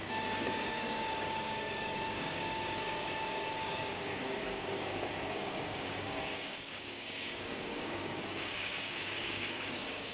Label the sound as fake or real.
fake